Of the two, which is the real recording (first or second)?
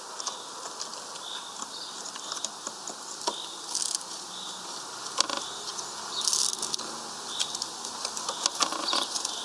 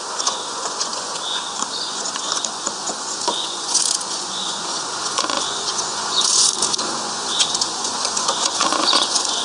first